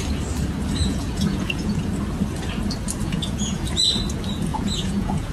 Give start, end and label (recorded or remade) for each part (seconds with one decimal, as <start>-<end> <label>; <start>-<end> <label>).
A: 0.0-0.8 recorded; 0.8-1.9 remade; 1.9-3.0 recorded; 3.0-3.6 remade; 3.6-4.5 recorded; 4.5-5.3 remade